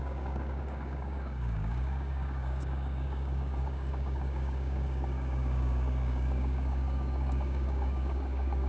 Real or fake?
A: fake